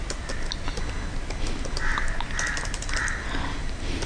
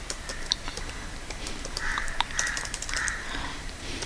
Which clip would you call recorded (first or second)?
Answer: first